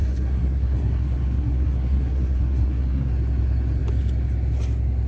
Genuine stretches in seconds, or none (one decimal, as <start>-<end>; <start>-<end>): 3.1-5.1